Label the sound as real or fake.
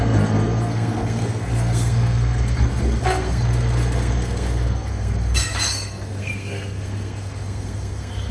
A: fake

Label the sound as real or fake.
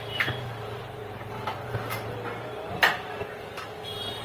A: real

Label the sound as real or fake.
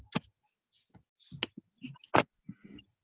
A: real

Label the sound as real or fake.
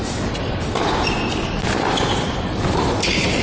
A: real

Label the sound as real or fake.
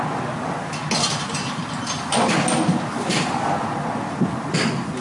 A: real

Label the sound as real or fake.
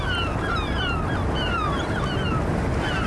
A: real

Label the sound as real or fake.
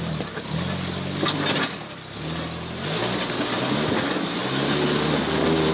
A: real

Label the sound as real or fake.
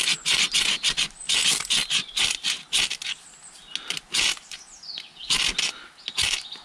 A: real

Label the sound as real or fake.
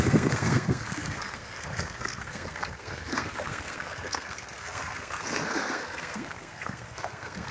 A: fake